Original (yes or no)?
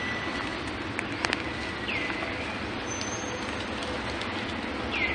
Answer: yes